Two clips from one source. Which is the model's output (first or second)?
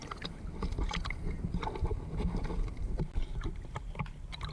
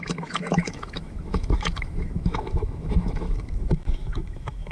second